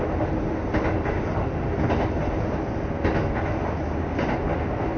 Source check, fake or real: real